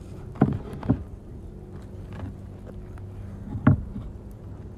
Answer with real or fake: real